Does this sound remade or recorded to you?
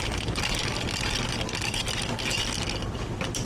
recorded